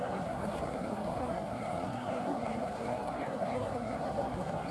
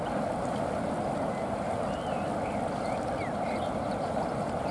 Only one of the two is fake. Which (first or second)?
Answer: first